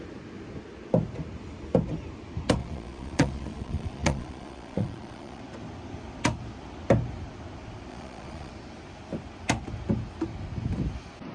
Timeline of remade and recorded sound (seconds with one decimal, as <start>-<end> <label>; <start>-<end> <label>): 0.0-2.6 recorded; 2.6-5.4 remade; 5.4-7.9 recorded; 7.9-8.5 remade; 8.5-11.3 recorded